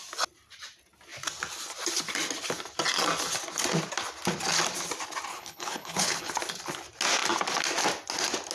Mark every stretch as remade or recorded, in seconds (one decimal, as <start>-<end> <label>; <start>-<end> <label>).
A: 0.0-5.3 recorded; 5.3-6.3 remade; 6.3-8.5 recorded